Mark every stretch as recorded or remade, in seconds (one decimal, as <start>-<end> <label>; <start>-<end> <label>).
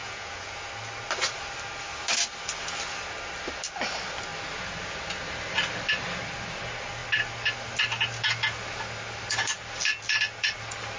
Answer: 0.0-0.7 remade; 0.7-11.0 recorded